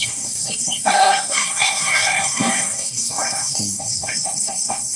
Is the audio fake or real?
fake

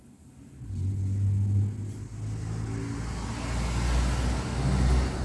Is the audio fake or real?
real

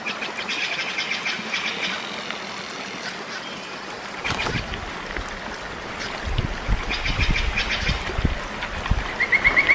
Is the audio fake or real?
real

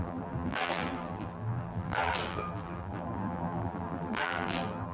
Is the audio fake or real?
fake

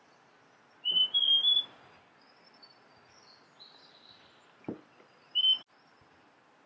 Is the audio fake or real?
real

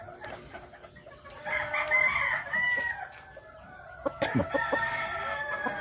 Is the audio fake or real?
real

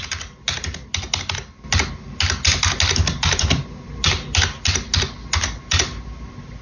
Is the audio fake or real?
real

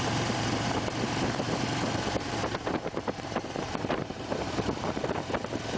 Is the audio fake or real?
fake